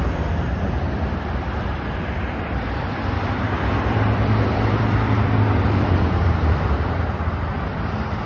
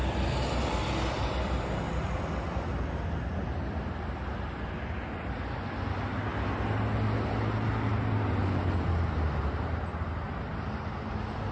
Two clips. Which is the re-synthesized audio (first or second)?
first